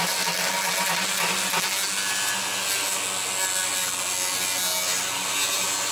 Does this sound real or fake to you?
real